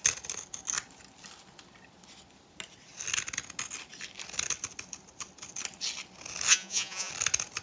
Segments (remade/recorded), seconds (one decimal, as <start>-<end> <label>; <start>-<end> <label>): 0.0-6.5 recorded; 6.5-7.1 remade; 7.1-7.6 recorded